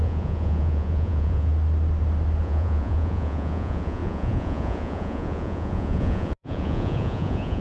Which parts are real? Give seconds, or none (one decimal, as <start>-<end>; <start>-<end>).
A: 1.5-2.4